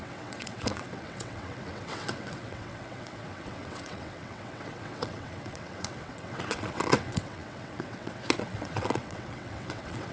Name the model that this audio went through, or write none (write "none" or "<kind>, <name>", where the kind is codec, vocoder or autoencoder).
vocoder, WaveNeXt